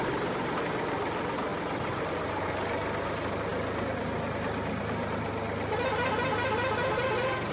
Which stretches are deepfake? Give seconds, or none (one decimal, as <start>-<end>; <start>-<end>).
none